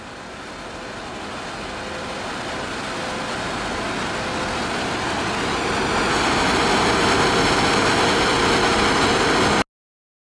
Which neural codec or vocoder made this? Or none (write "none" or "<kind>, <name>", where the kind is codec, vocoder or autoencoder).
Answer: none